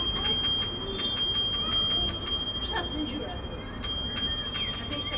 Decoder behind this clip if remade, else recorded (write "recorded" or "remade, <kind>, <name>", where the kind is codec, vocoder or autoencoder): recorded